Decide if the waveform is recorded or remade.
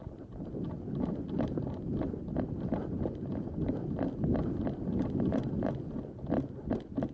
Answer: recorded